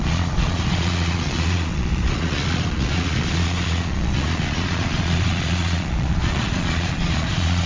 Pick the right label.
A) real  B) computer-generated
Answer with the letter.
B